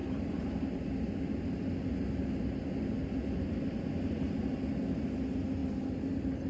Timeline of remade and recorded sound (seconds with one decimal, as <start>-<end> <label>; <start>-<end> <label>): 0.0-6.5 recorded